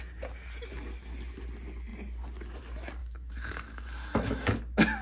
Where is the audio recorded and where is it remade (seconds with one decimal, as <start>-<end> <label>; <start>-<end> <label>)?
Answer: 0.0-3.0 recorded; 3.0-4.6 remade; 4.6-5.0 recorded